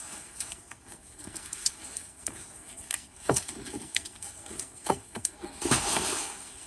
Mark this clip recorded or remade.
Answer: remade